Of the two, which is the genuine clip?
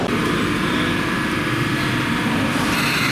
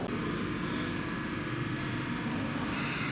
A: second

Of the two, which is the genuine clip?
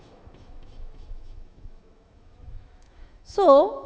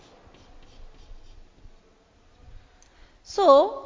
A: second